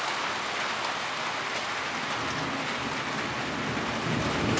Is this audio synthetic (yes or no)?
no